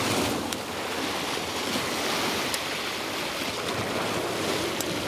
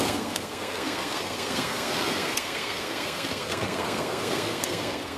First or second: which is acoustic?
first